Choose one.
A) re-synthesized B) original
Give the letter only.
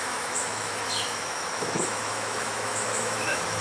A